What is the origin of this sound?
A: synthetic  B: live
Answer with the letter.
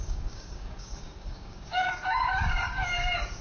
A